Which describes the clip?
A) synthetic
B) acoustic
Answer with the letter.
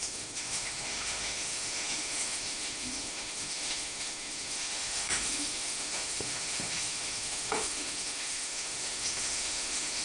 A